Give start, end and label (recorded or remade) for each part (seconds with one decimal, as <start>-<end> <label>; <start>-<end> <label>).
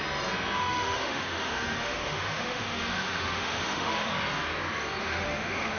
0.0-0.6 recorded; 0.6-4.1 remade; 4.1-5.0 recorded; 5.0-5.8 remade